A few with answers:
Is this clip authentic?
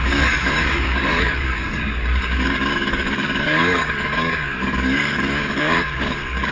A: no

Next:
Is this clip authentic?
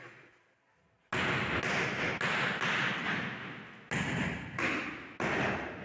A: yes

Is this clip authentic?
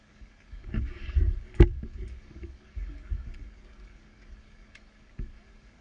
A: no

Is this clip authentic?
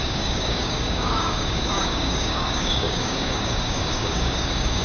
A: no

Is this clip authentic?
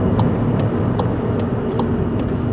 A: yes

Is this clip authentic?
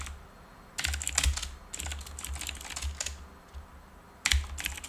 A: yes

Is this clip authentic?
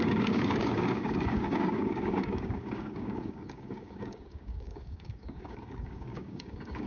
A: no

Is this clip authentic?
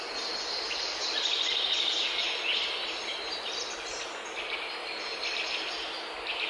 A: yes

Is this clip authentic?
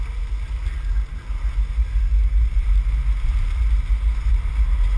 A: yes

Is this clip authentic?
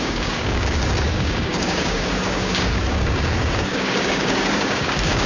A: no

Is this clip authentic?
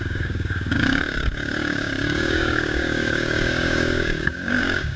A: no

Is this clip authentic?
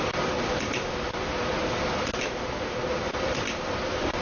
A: yes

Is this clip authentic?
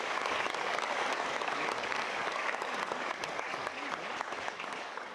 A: no